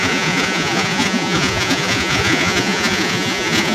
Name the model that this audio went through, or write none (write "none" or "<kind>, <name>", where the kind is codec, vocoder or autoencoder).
vocoder, Vocos